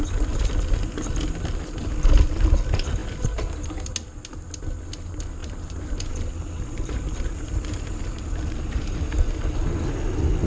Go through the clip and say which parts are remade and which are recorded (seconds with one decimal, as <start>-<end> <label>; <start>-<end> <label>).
0.0-5.4 recorded; 5.4-9.3 remade; 9.3-10.5 recorded